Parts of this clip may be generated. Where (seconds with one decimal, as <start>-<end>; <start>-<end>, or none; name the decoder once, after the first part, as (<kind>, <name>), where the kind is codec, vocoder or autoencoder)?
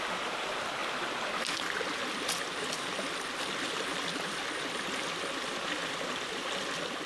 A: none